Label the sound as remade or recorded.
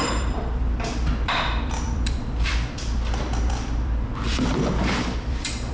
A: remade